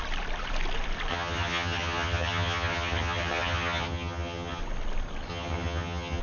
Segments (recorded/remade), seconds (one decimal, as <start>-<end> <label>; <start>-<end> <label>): 0.0-1.1 recorded; 1.1-4.6 remade; 4.6-5.3 recorded; 5.3-6.2 remade